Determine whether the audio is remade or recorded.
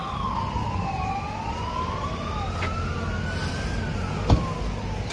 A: recorded